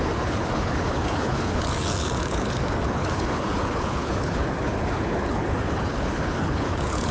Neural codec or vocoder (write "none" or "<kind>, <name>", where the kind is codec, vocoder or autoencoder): codec, HILCodec